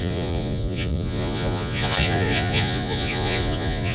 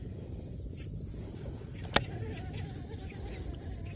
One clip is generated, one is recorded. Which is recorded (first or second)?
second